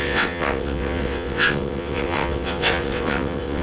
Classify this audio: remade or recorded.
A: remade